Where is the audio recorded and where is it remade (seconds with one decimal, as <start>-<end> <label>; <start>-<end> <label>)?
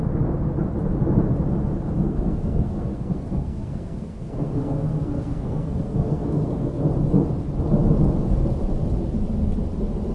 0.0-2.0 recorded; 2.0-6.8 remade; 6.8-10.1 recorded